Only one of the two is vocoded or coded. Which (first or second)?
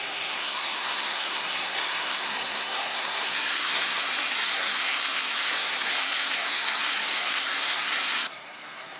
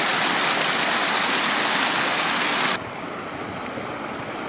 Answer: first